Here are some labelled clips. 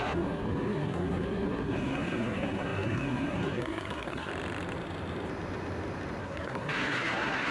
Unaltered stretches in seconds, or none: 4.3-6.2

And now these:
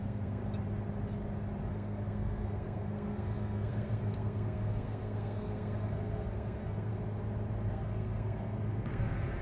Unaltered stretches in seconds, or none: 0.4-1.7; 6.9-7.7